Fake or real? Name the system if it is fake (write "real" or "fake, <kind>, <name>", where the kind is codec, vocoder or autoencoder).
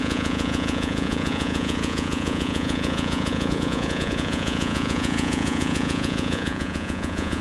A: fake, vocoder, Vocos